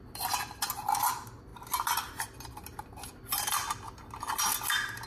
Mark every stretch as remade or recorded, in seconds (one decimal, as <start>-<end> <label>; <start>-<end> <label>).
0.0-5.1 recorded